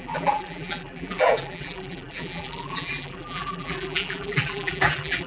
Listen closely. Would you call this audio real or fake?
fake